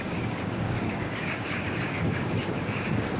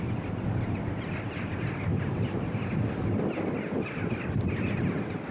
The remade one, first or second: first